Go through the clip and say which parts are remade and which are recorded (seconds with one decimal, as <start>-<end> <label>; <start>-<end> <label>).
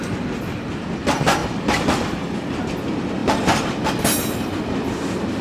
0.0-5.4 recorded